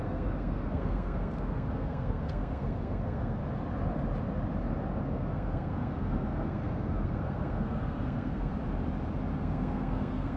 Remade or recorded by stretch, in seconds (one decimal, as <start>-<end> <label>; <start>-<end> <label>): 0.0-3.4 remade; 3.4-5.0 recorded; 5.0-8.5 remade; 8.5-9.4 recorded; 9.4-10.4 remade